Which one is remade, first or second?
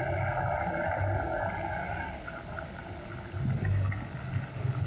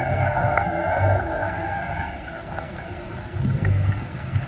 second